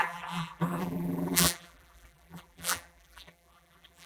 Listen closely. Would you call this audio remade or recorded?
remade